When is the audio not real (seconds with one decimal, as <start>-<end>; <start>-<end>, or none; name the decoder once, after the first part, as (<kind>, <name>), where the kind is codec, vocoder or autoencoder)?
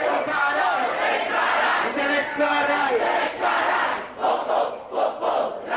0.4-1.0 (codec, DAC); 2.3-2.9